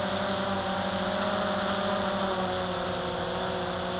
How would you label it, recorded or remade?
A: recorded